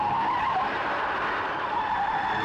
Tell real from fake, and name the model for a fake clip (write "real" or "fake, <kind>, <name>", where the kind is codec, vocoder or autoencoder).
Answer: real